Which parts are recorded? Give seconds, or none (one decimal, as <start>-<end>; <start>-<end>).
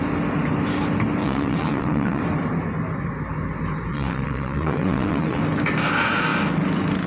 0.0-1.2; 2.2-3.9; 5.4-7.1